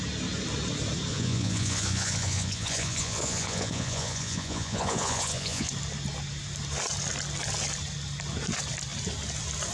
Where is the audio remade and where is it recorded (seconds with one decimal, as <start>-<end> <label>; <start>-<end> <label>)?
0.0-1.1 recorded; 1.1-5.7 remade; 5.7-9.7 recorded